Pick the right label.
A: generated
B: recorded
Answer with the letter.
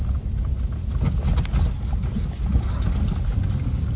B